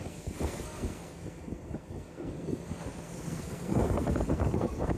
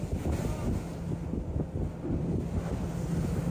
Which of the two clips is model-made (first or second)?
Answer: first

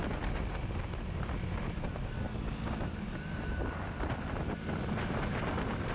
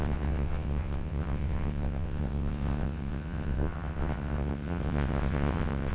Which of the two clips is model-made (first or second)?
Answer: second